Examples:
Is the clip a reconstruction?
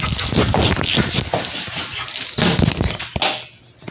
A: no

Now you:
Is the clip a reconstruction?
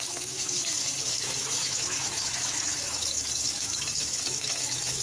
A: yes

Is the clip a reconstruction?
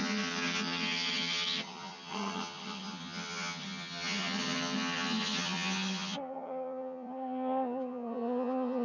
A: yes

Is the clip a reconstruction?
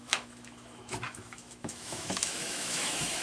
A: yes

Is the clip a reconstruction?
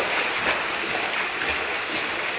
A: no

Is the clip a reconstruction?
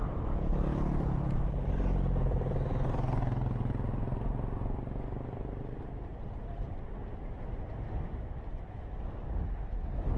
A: no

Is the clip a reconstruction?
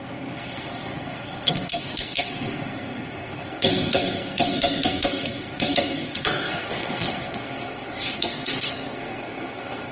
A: yes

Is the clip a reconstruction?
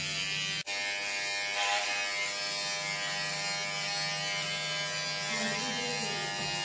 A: no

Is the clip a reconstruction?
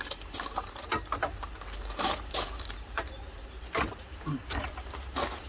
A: yes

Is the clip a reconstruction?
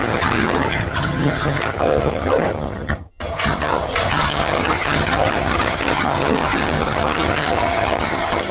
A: yes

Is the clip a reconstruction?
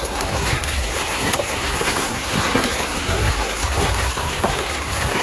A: yes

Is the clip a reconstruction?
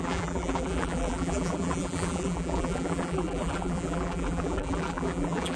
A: yes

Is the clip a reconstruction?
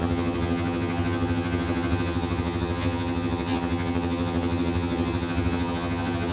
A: yes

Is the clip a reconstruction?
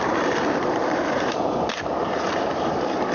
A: yes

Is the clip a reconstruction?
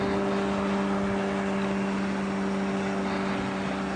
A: no